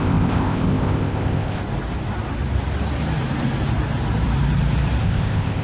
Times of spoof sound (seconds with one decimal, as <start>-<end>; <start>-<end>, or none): 0.0-1.6; 5.0-5.6